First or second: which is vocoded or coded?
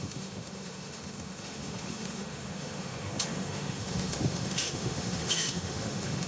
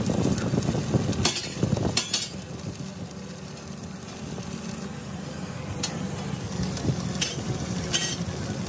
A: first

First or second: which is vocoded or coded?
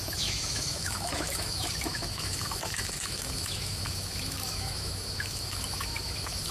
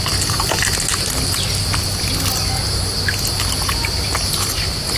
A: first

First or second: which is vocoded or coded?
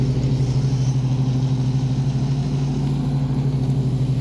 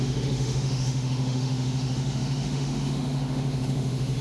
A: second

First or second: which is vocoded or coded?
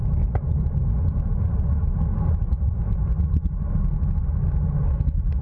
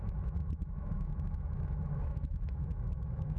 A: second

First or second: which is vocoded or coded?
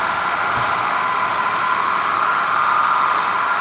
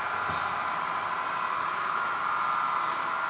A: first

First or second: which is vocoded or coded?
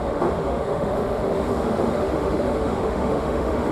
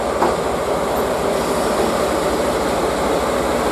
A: first